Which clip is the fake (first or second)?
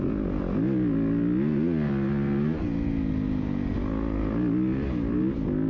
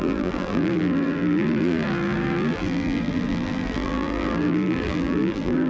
second